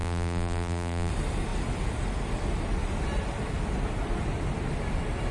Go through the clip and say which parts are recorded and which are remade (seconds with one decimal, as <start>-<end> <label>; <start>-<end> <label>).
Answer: 0.0-1.1 remade; 1.1-5.3 recorded